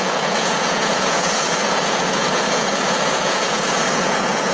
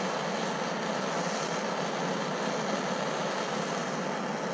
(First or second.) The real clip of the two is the second